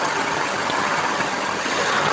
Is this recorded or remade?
remade